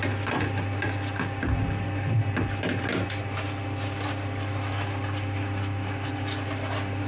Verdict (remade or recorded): recorded